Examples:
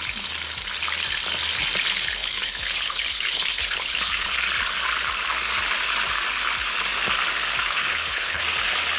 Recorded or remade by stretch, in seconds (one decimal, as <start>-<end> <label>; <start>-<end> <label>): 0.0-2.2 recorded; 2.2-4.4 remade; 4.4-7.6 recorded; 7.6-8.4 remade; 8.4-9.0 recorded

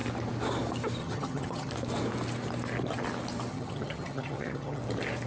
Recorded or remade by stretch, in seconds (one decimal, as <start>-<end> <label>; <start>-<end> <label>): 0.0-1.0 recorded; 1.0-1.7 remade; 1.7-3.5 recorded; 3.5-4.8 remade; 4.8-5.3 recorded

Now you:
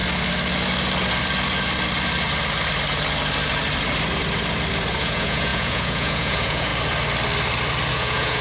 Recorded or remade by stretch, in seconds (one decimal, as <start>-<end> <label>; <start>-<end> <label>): 0.0-5.0 recorded; 5.0-6.7 remade; 6.7-7.9 recorded; 7.9-8.4 remade

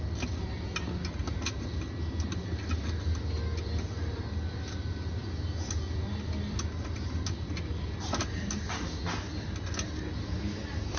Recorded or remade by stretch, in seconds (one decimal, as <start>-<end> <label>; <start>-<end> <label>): 0.0-11.0 recorded

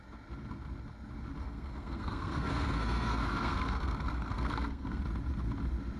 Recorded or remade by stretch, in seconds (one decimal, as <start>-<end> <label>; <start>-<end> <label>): 0.0-1.4 recorded; 1.4-5.0 remade; 5.0-6.0 recorded

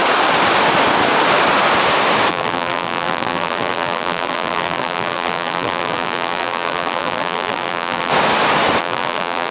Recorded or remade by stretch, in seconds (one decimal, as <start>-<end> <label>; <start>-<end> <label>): 0.0-2.3 recorded; 2.3-8.1 remade; 8.1-8.8 recorded; 8.8-9.5 remade

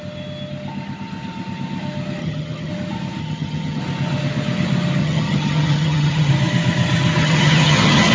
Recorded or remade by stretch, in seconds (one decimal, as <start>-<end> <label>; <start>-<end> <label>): 0.0-2.2 recorded; 2.2-2.7 remade; 2.7-3.2 recorded; 3.2-3.8 remade; 3.8-5.0 recorded; 5.0-6.3 remade; 6.3-7.2 recorded; 7.2-8.1 remade

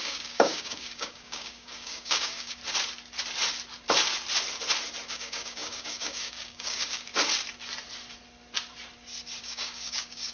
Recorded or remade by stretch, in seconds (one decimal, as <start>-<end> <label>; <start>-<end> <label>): 0.0-2.6 remade; 2.6-5.1 recorded; 5.1-7.1 remade; 7.1-9.4 recorded; 9.4-10.3 remade